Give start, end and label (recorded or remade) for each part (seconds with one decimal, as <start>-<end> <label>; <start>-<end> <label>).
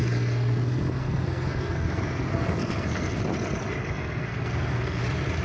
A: 0.0-3.2 remade; 3.2-3.8 recorded; 3.8-5.0 remade; 5.0-5.4 recorded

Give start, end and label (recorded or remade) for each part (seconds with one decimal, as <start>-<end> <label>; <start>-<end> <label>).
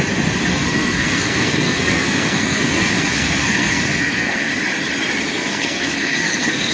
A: 0.0-0.5 recorded; 0.5-4.5 remade; 4.5-5.3 recorded; 5.3-6.7 remade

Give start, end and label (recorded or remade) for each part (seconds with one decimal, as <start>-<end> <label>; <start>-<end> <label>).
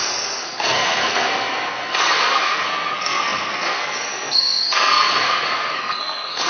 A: 0.0-6.5 remade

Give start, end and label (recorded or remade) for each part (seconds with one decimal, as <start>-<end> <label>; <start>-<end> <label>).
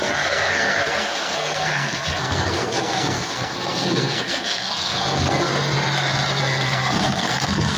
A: 0.0-5.5 remade; 5.5-6.4 recorded; 6.4-7.8 remade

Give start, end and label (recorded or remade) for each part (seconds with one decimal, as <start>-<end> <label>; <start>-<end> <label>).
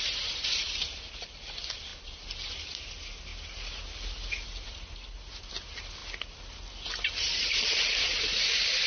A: 0.0-1.9 remade; 1.9-2.8 recorded; 2.8-3.3 remade; 3.3-4.5 recorded; 4.5-6.0 remade; 6.0-8.2 recorded; 8.2-8.9 remade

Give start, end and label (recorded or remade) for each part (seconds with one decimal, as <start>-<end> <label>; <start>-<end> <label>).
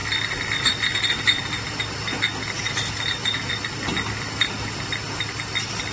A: 0.0-5.9 recorded